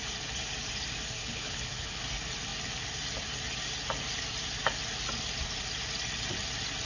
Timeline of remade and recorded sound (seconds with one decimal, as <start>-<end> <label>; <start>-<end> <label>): 0.0-1.2 recorded; 1.2-2.0 remade; 2.0-6.9 recorded